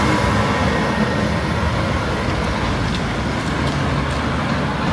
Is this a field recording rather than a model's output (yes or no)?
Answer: yes